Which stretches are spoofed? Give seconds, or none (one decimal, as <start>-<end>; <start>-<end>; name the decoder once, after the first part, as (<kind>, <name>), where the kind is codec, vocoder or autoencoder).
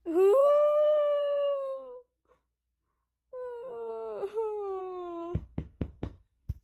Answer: 0.4-3.9 (codec, SNAC); 4.8-6.6